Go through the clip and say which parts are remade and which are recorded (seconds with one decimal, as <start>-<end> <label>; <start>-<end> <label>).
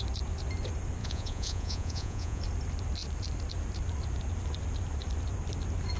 0.0-1.0 recorded; 1.0-2.4 remade; 2.4-6.0 recorded